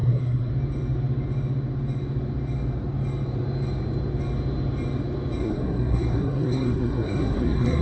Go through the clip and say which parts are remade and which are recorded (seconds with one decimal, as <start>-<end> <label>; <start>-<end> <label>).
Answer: 0.0-0.5 remade; 0.5-5.4 recorded; 5.4-7.8 remade